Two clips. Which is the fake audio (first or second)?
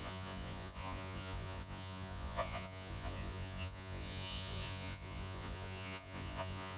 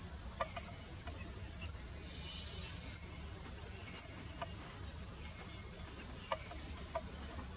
first